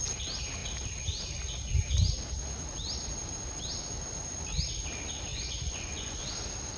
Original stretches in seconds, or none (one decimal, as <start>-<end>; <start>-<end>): 0.0-5.3; 6.3-6.8